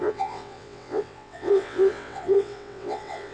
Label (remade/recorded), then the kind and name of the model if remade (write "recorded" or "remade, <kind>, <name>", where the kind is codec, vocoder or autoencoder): remade, vocoder, WaveNeXt